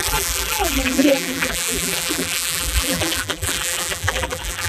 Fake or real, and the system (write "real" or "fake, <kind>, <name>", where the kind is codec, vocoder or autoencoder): fake, vocoder, BigVGAN v2